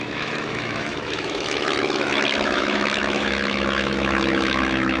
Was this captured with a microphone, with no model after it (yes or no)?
no